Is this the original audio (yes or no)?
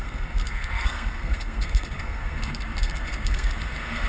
no